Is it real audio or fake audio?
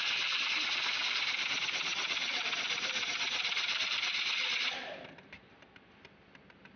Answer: fake